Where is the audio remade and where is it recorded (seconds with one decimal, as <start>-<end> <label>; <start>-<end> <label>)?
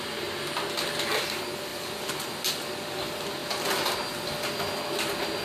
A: 0.0-5.4 recorded